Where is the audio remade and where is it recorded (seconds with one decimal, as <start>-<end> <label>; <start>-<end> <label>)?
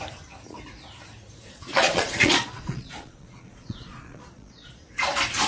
0.0-1.4 recorded; 1.4-4.7 remade; 4.7-5.5 recorded